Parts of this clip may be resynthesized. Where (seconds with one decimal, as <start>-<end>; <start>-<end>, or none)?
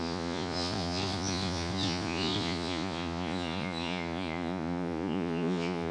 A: 0.0-5.9